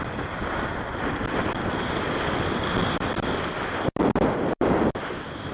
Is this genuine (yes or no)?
yes